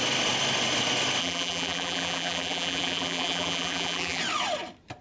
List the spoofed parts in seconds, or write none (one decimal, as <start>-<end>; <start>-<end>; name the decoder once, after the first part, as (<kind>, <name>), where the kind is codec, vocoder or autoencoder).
1.2-4.2 (vocoder, BigVGAN v2)